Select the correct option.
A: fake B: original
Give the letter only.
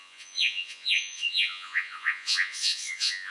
A